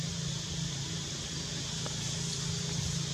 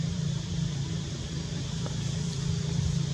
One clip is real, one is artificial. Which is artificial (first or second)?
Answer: second